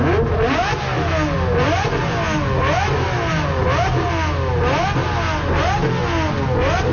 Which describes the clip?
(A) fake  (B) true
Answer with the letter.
B